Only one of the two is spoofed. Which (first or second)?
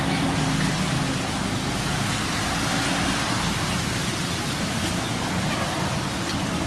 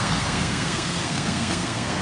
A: second